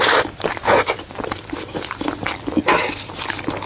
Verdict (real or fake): real